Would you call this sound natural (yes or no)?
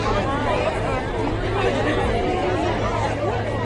yes